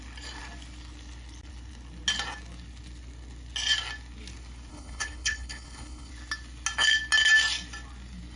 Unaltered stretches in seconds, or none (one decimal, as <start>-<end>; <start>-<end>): 0.0-4.7; 6.1-8.4